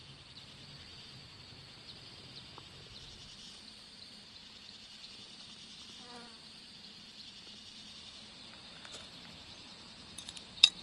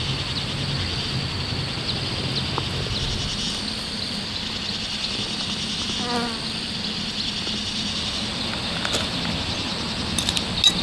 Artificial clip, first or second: first